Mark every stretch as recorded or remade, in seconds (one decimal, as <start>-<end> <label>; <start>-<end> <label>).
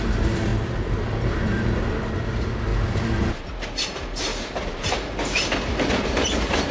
0.0-2.7 remade; 2.7-3.8 recorded; 3.8-4.3 remade; 4.3-4.9 recorded; 4.9-6.7 remade